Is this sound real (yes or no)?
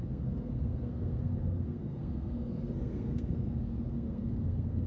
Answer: no